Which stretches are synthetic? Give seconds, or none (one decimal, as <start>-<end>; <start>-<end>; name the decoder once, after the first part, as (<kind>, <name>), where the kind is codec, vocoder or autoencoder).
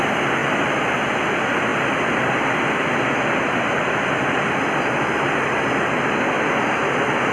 0.4-1.0 (vocoder, BigVGAN v2)